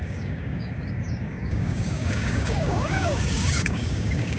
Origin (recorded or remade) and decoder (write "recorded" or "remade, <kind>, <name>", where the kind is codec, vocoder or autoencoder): remade, codec, DAC